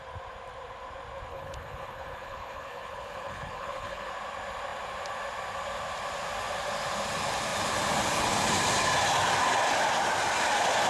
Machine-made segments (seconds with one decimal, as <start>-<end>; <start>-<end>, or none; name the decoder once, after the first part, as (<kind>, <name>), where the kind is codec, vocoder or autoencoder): 1.3-4.1 (codec, HILCodec)